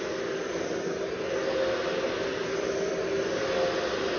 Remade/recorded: recorded